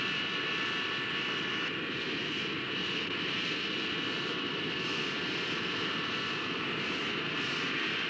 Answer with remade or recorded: remade